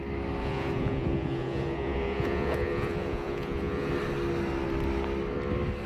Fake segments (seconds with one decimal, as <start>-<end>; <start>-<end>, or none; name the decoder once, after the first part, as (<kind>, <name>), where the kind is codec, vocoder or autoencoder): 0.4-3.9 (vocoder, Vocos)